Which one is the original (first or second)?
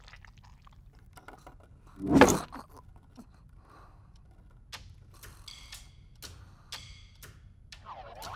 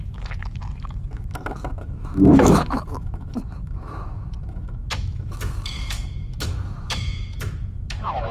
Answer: first